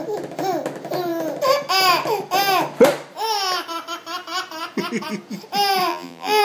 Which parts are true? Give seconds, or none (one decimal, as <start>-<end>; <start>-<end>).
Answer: 0.0-5.9